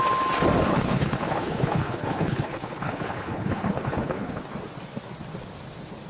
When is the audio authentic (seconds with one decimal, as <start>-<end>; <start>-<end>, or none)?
0.0-0.7; 4.4-6.1